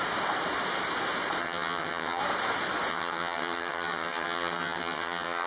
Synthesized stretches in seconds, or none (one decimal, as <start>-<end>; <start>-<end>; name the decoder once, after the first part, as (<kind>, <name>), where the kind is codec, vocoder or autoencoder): 1.4-2.2 (vocoder, HiFi-GAN); 2.9-5.5